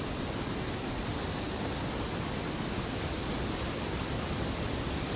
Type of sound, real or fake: real